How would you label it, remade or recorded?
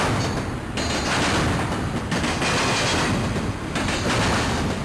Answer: recorded